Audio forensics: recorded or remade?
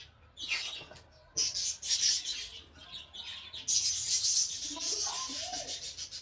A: recorded